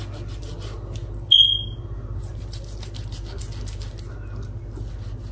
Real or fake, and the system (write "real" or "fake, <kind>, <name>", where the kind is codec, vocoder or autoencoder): real